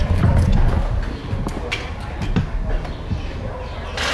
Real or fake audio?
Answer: real